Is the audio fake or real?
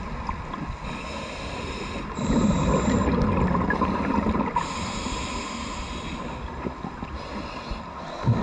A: real